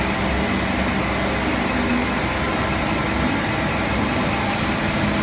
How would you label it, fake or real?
real